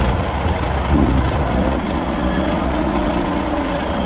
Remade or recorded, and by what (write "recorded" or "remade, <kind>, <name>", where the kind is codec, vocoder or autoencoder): remade, vocoder, Vocos